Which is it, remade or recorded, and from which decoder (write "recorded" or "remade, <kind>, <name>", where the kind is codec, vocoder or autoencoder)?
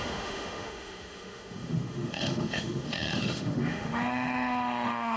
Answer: remade, autoencoder, DAC-VAE